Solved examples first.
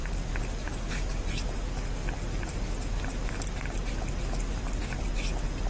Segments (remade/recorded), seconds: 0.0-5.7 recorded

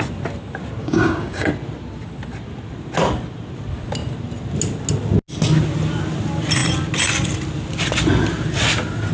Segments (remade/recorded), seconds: 0.0-0.8 recorded; 0.8-1.5 remade; 1.5-9.1 recorded

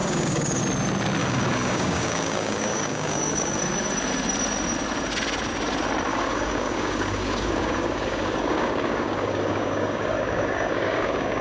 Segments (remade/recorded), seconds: 0.0-0.6 remade; 0.6-1.2 recorded; 1.2-3.6 remade; 3.6-6.1 recorded; 6.1-11.4 remade

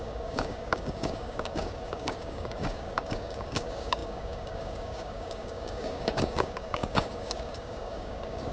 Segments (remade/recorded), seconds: 0.0-8.5 remade

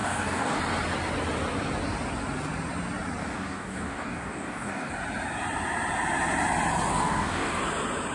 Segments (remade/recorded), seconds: 0.0-0.6 remade; 0.6-3.2 recorded; 3.2-4.9 remade; 4.9-6.9 recorded; 6.9-7.6 remade; 7.6-8.1 recorded

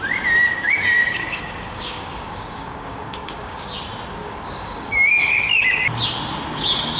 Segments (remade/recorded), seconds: 0.0-0.5 recorded; 0.5-3.8 remade; 3.8-4.2 recorded; 4.2-5.4 remade; 5.4-7.0 recorded